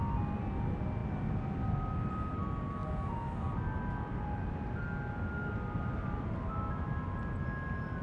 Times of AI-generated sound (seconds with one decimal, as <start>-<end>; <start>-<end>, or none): none